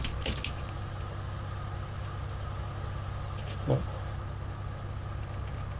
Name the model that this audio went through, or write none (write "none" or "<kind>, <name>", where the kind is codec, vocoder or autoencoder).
none